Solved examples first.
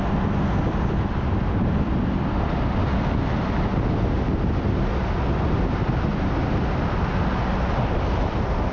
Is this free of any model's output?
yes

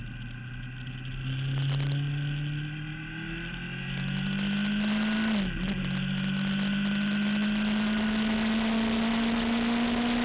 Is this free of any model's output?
yes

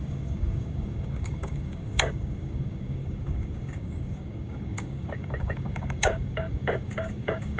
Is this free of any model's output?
no